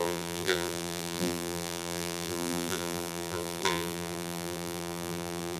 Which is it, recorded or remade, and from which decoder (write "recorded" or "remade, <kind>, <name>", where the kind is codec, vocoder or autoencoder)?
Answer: remade, vocoder, BigVGAN v2